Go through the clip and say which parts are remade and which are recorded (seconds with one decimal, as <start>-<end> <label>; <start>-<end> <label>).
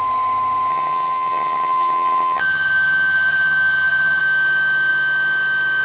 0.0-0.7 recorded; 0.7-4.2 remade; 4.2-5.8 recorded